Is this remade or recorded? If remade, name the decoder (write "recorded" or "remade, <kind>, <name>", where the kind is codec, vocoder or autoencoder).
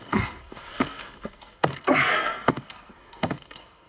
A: remade, codec, SNAC